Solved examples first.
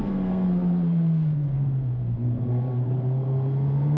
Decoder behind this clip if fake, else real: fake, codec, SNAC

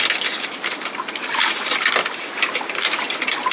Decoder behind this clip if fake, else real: real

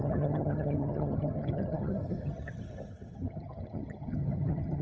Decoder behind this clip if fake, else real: fake, vocoder, HiFi-GAN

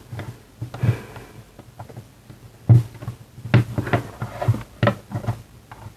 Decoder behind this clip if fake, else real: real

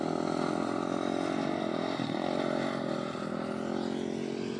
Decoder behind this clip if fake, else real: real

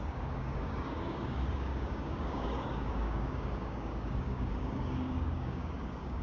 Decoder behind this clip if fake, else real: fake, codec, DAC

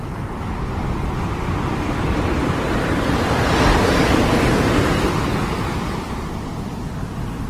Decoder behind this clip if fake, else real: real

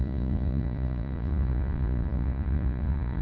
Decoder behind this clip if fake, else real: fake, vocoder, Vocos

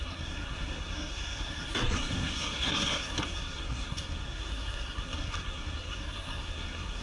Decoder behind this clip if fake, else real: fake, codec, SNAC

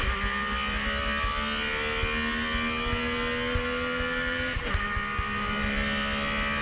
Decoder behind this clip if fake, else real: real